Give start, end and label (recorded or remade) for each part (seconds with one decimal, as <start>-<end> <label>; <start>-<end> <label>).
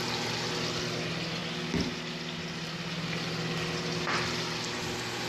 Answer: 0.0-5.3 recorded